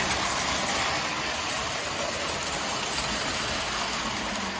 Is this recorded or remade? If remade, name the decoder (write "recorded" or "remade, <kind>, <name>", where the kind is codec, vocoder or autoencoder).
recorded